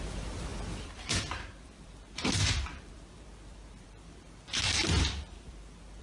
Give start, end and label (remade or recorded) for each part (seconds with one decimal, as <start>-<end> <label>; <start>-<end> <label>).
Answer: 0.0-6.0 remade